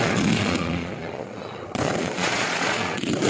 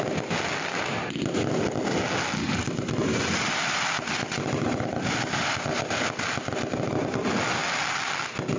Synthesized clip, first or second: first